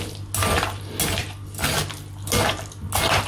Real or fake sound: real